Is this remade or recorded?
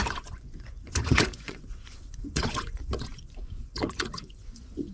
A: remade